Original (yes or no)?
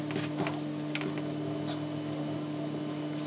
yes